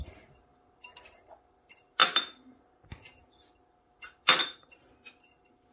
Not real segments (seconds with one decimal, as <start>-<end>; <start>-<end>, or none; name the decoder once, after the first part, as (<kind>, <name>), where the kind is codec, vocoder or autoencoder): none